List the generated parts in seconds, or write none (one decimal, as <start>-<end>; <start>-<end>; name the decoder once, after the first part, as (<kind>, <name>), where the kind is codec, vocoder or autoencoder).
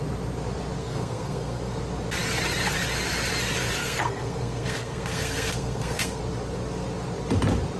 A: 0.8-1.8 (codec, SNAC); 3.8-6.2